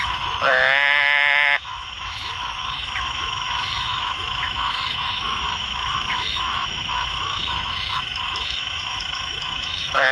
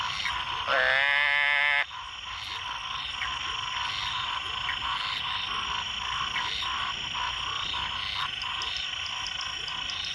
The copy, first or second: first